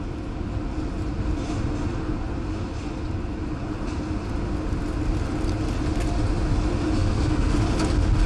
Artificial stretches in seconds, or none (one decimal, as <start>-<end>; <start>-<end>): 7.0-7.5